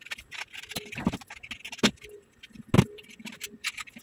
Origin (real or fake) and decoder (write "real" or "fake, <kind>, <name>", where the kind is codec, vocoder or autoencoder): real